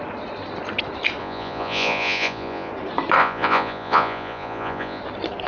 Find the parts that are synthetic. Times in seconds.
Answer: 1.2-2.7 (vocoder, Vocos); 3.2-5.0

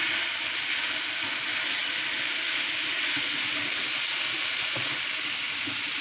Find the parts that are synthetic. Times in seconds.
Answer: none